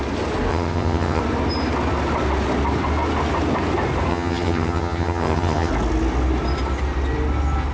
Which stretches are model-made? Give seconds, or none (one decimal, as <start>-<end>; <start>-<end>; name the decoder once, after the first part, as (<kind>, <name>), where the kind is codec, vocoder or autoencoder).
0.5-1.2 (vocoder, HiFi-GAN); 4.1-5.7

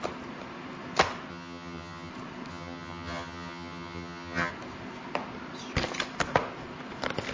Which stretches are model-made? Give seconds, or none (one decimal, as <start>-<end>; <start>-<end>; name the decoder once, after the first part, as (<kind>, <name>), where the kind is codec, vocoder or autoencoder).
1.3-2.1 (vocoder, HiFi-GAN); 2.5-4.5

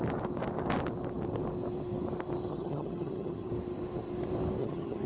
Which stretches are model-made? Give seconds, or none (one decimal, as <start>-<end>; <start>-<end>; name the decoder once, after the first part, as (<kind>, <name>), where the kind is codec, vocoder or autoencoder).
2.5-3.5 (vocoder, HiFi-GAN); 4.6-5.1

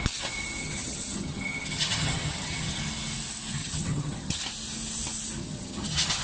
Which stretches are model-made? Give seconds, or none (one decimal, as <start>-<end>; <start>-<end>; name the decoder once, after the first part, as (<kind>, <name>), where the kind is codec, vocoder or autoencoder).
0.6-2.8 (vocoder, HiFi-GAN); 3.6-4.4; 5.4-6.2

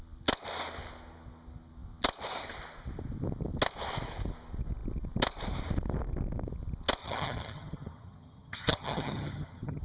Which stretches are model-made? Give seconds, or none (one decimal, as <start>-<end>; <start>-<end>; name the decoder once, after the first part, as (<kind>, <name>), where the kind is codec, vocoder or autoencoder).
7.0-9.8 (vocoder, HiFi-GAN)

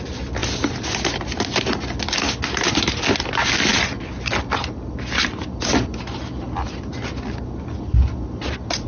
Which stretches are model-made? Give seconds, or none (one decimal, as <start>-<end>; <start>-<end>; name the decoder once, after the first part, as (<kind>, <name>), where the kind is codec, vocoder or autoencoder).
none

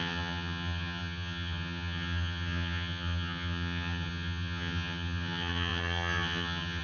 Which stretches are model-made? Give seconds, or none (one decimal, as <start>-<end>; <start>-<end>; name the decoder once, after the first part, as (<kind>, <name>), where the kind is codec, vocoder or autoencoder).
0.0-6.8 (vocoder, HiFi-GAN)